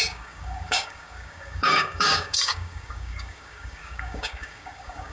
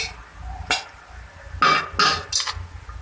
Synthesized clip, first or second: first